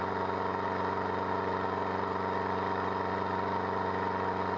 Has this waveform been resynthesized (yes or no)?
no